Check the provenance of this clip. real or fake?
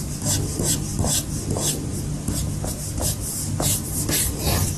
real